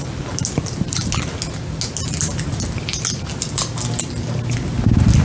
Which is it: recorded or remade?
recorded